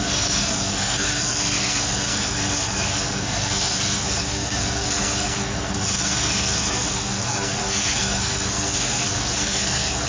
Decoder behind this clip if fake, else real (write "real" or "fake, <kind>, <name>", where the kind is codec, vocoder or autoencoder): fake, codec, SNAC